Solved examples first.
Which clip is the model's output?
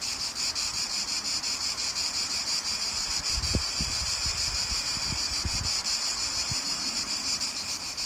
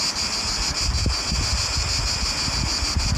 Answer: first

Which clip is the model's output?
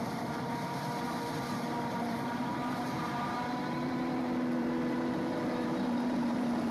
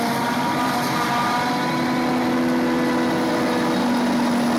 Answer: first